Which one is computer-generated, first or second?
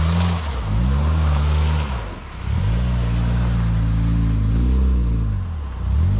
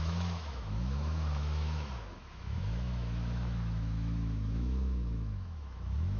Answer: second